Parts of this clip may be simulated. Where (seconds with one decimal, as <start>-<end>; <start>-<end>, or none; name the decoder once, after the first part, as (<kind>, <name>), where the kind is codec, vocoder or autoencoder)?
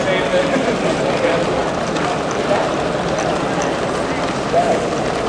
1.6-3.4 (vocoder, BigVGAN v2)